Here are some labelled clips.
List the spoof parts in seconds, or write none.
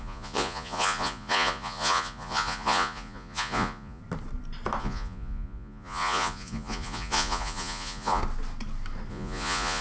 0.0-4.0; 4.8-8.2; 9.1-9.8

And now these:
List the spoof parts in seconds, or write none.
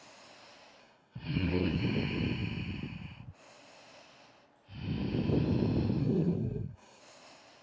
0.8-1.8; 6.0-7.0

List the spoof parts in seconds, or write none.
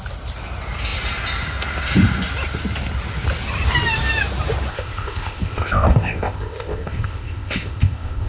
4.7-8.3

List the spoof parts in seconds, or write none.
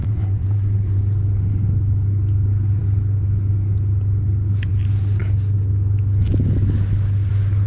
0.0-1.0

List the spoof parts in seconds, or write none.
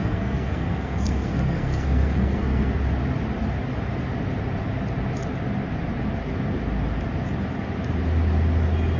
0.0-2.7